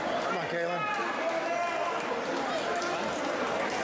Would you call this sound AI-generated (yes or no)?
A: no